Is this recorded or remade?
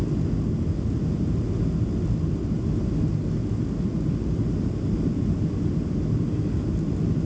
recorded